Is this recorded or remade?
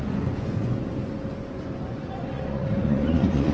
remade